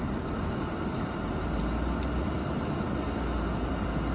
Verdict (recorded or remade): recorded